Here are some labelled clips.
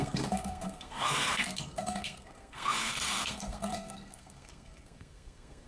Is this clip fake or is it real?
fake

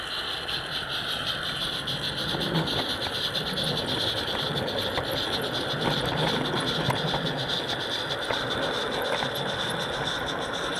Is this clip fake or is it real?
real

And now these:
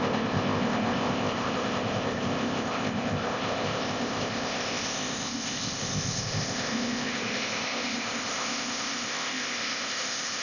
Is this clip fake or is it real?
fake